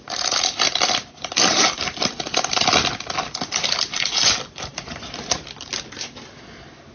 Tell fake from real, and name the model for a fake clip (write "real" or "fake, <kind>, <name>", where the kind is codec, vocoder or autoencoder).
real